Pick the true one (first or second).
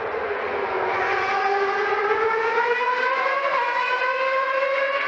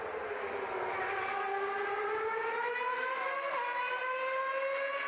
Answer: second